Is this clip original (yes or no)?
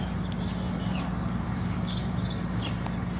yes